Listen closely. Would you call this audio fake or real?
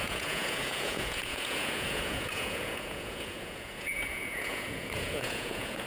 fake